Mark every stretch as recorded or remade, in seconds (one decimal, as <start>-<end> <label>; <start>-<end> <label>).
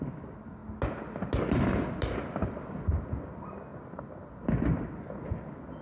0.0-5.8 recorded